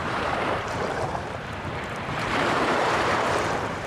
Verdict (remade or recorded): remade